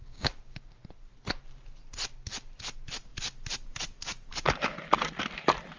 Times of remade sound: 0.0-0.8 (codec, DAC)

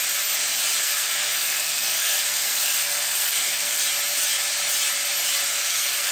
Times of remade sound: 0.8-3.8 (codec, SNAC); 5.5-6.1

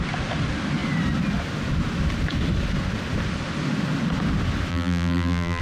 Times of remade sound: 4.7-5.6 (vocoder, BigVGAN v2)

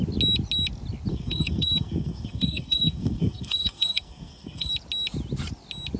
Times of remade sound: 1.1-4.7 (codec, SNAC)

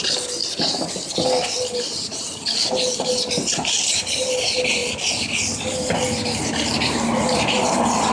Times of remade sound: none